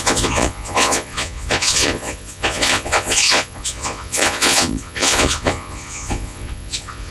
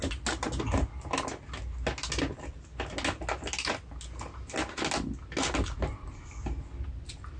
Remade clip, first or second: first